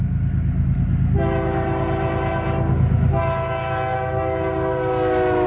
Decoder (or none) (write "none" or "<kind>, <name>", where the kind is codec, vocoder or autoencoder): none